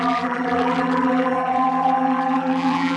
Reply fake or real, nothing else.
fake